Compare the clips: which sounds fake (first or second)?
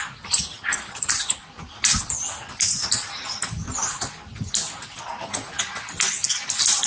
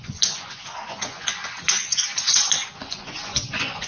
second